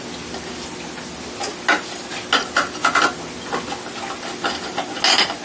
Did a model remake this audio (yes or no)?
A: no